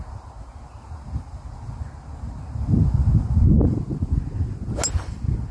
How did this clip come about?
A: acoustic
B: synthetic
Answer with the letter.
A